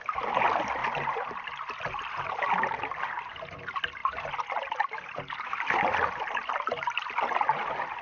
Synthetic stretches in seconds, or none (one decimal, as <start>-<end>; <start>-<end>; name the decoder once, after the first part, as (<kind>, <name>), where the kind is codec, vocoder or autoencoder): none